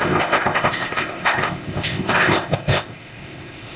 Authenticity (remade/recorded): remade